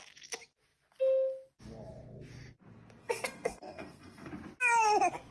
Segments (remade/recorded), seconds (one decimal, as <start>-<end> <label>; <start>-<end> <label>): 0.0-3.0 recorded; 3.0-4.3 remade; 4.3-5.3 recorded